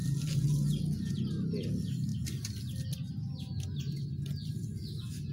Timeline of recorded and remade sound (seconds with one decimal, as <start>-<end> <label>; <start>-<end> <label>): 0.0-5.3 recorded